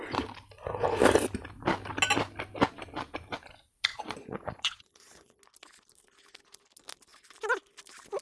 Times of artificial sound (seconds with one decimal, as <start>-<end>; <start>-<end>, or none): 3.9-5.4